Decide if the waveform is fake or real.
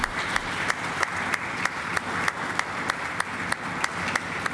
real